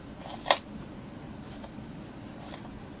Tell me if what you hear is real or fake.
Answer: real